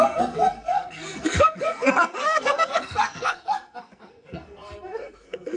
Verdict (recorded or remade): remade